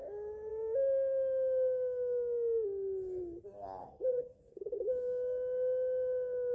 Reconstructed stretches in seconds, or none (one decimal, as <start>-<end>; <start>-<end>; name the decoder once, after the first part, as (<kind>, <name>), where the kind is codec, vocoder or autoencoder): 3.8-4.9 (codec, SNAC)